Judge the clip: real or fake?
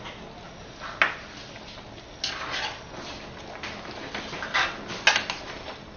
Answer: real